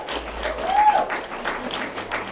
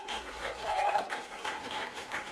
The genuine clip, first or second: first